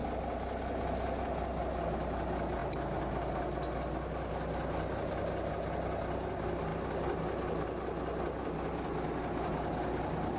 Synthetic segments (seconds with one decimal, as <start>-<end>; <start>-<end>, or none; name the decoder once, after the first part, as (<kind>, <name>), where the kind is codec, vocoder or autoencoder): none